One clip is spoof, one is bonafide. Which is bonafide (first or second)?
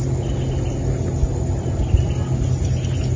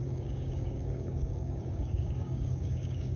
first